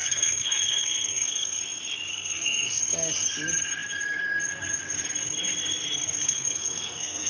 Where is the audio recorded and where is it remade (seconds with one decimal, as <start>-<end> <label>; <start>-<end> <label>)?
0.0-1.6 remade; 1.6-2.1 recorded; 2.1-2.8 remade; 2.8-6.2 recorded; 6.2-7.3 remade